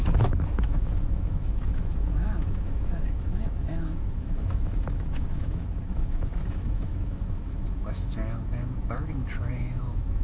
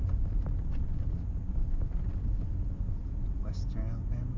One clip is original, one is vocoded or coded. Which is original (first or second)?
second